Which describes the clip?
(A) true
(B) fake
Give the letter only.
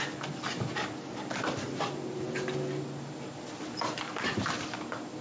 A